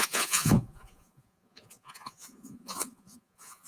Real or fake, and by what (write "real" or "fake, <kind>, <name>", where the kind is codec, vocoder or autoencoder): fake, vocoder, Vocos